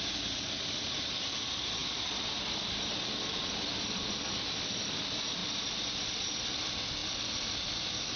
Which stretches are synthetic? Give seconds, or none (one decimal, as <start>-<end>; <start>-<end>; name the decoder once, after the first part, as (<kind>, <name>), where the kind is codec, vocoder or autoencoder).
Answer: 1.8-3.9 (vocoder, BigVGAN v2); 5.4-6.3